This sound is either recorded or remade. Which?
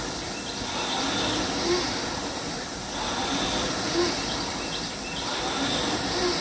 recorded